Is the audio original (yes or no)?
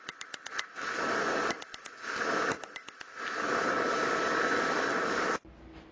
yes